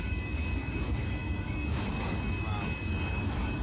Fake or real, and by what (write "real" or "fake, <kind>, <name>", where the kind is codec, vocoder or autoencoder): fake, codec, DAC